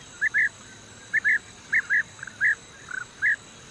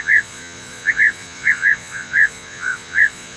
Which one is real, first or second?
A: first